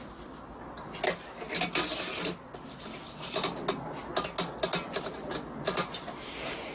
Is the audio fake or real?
real